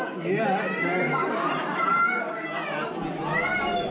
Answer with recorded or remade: recorded